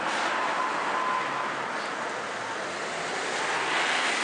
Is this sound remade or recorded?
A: recorded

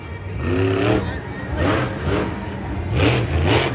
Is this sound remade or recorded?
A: recorded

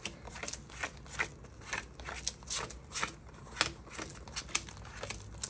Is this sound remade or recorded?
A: recorded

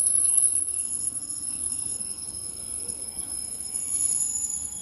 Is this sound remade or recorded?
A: remade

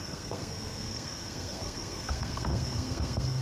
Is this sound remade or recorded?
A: remade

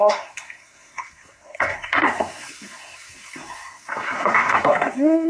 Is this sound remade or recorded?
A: remade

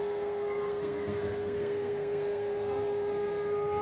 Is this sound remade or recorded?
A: remade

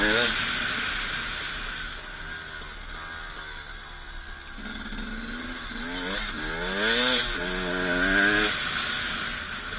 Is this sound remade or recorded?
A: recorded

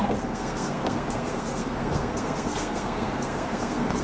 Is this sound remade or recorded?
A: remade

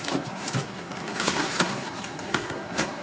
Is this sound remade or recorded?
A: remade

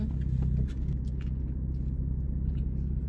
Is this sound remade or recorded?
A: recorded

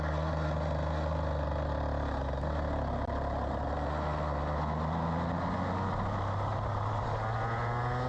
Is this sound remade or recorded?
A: recorded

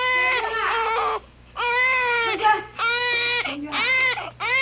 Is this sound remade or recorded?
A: recorded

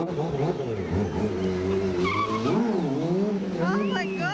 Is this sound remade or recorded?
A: recorded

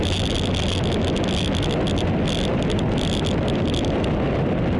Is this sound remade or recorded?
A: recorded